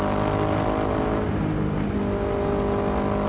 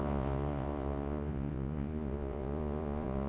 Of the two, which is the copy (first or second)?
second